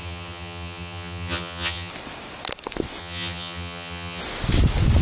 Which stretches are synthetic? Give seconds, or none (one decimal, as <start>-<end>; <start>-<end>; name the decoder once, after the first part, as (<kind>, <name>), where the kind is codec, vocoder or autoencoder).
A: 0.0-1.9 (vocoder, HiFi-GAN); 3.0-4.2